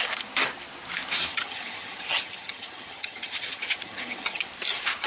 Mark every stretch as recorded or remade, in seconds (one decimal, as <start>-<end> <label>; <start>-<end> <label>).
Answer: 0.0-1.3 recorded; 1.3-4.4 remade; 4.4-5.1 recorded